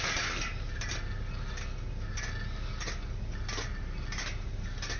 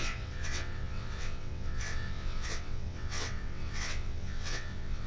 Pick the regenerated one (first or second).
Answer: second